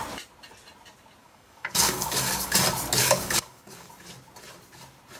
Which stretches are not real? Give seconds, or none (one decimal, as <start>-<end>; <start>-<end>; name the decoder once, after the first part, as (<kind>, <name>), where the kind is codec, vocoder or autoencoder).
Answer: 1.2-2.5 (codec, DAC); 3.0-3.9